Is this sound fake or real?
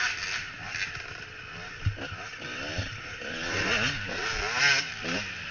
real